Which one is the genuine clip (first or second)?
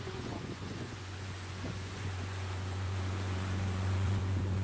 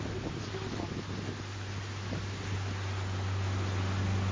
second